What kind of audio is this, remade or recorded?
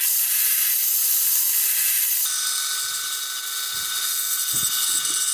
recorded